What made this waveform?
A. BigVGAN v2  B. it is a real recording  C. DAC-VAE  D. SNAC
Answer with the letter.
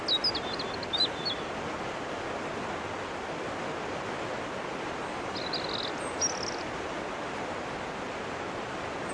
B